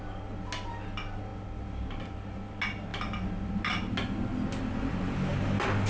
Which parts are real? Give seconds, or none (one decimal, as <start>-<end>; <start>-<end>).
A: 0.0-5.9